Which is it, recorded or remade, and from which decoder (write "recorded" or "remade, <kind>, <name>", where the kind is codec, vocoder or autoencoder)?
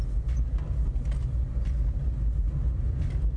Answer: recorded